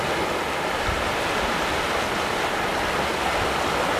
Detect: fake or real real